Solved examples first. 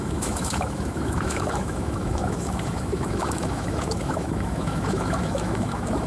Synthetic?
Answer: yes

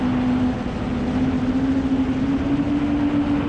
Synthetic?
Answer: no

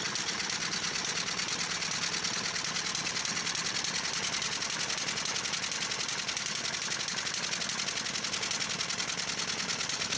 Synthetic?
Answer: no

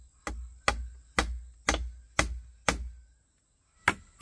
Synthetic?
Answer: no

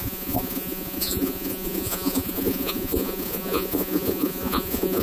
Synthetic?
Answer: yes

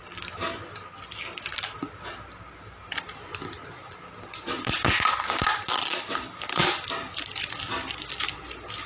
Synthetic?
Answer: no